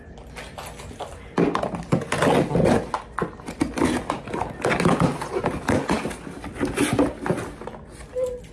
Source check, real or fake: real